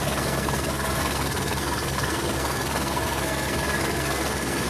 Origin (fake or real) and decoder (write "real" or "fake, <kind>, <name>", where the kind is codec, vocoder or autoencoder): fake, codec, SNAC